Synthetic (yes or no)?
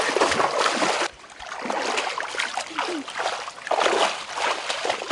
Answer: no